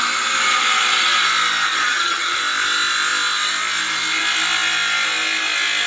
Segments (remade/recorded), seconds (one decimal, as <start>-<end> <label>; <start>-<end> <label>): 0.0-1.7 recorded; 1.7-2.4 remade; 2.4-5.9 recorded

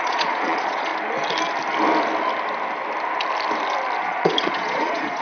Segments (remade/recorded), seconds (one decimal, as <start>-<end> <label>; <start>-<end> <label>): 0.0-0.9 remade; 0.9-4.0 recorded; 4.0-5.2 remade

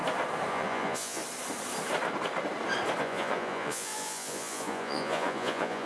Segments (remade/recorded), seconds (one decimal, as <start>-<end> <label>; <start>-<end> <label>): 0.0-0.5 recorded; 0.5-1.2 remade; 1.2-3.0 recorded; 3.0-5.9 remade

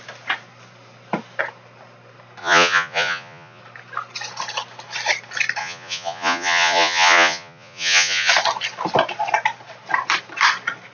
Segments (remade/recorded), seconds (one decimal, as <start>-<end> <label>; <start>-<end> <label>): 0.0-2.4 recorded; 2.4-3.6 remade; 3.6-5.6 recorded; 5.6-8.3 remade; 8.3-10.9 recorded

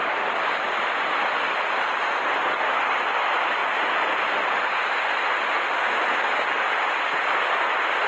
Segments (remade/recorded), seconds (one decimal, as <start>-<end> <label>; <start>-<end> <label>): 0.0-8.1 recorded

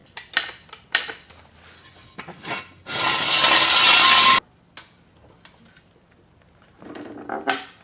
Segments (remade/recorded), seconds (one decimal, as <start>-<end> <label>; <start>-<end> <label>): 0.0-7.8 recorded

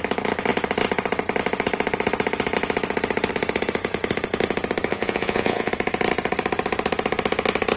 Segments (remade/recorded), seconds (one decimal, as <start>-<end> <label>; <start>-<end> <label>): 0.0-4.9 recorded; 4.9-5.7 remade; 5.7-7.8 recorded